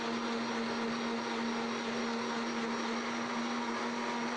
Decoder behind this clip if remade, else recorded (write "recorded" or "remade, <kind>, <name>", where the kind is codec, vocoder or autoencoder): recorded